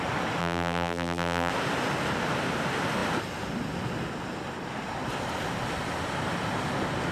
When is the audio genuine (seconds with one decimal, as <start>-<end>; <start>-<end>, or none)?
0.0-0.4; 1.5-7.1